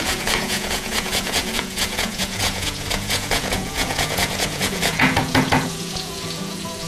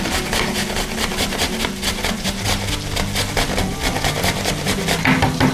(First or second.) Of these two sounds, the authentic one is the second